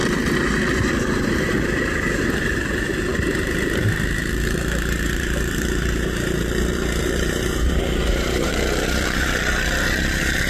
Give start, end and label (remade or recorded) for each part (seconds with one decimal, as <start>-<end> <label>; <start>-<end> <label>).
0.0-10.5 remade